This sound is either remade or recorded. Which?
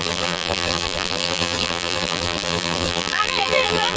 remade